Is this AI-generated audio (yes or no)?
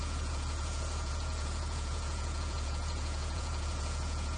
yes